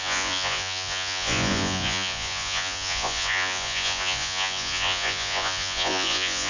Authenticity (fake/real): fake